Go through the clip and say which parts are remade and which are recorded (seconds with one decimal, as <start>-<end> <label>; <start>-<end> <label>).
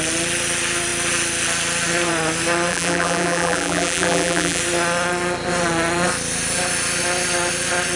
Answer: 0.0-2.7 recorded; 2.7-4.6 remade; 4.6-8.0 recorded